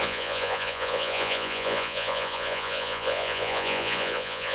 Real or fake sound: fake